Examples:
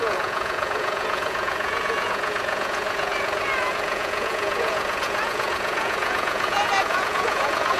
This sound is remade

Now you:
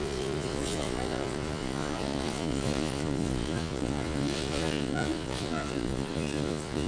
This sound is remade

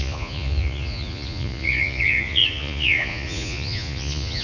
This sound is remade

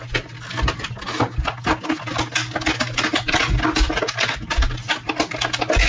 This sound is recorded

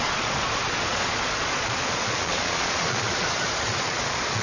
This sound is remade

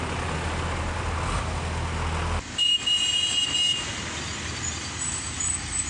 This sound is recorded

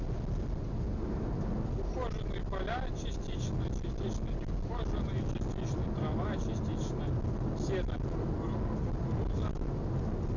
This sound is recorded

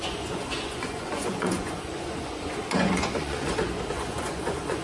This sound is remade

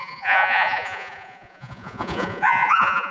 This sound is remade